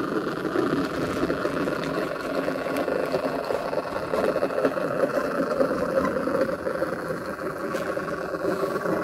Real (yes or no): no